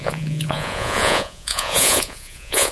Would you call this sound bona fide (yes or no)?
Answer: no